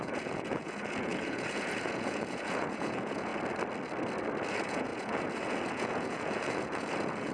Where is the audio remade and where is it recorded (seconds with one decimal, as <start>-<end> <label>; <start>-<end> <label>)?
0.0-3.3 remade; 3.3-4.5 recorded; 4.5-7.3 remade

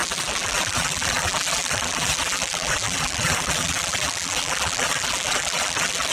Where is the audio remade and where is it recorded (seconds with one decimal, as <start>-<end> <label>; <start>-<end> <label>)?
0.0-6.1 remade

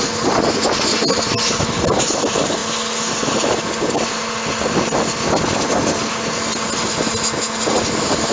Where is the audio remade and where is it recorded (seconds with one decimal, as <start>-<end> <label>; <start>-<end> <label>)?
0.0-8.3 recorded

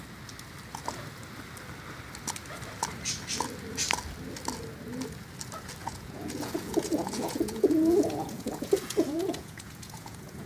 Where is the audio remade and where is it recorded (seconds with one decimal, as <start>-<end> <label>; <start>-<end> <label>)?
0.0-5.8 recorded; 5.8-10.5 remade

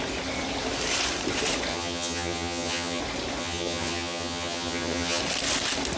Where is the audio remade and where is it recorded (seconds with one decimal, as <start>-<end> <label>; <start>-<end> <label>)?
0.0-1.7 recorded; 1.7-3.0 remade; 3.0-3.4 recorded; 3.4-5.2 remade; 5.2-6.0 recorded

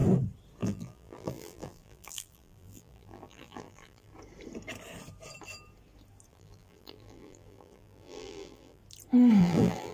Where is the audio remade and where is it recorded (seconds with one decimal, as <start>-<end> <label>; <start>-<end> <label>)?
0.0-0.6 recorded; 0.6-4.1 remade; 4.1-6.3 recorded; 6.3-8.8 remade; 8.8-9.4 recorded; 9.4-9.9 remade

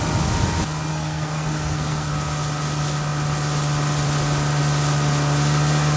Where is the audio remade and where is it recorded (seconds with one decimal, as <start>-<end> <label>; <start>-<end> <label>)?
0.0-0.9 recorded; 0.9-2.1 remade; 2.1-6.0 recorded